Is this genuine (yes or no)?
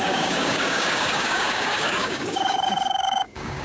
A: no